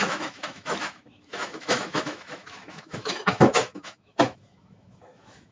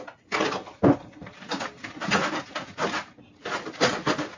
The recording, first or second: second